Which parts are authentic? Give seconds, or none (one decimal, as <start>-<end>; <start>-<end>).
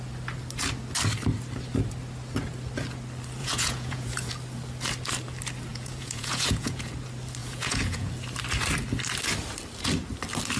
0.0-3.4; 4.3-5.7; 6.9-7.4; 8.1-10.6